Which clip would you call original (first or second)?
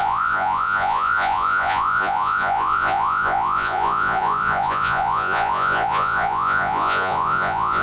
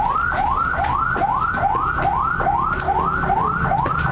second